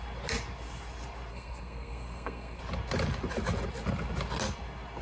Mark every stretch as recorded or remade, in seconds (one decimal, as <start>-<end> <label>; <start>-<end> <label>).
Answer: 0.0-1.3 recorded; 1.3-2.6 remade; 2.6-5.0 recorded